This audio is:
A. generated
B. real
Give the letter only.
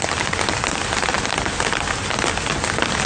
B